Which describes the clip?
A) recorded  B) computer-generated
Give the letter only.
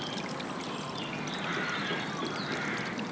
A